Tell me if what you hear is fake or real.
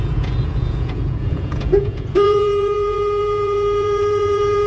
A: fake